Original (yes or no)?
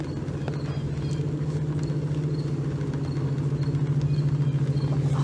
yes